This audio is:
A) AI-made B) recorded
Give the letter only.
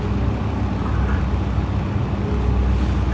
B